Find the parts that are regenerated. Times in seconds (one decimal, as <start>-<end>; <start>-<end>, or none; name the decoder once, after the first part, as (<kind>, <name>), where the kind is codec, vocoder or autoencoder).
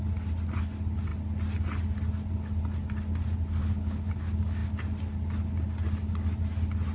3.6-4.1 (codec, HILCodec)